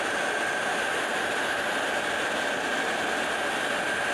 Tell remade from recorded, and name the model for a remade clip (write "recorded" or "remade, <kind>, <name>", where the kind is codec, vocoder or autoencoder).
recorded